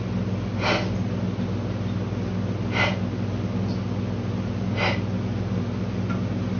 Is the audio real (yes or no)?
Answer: yes